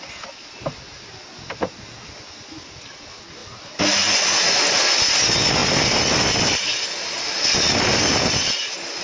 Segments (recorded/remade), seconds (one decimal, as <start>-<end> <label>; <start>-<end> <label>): 0.0-9.0 recorded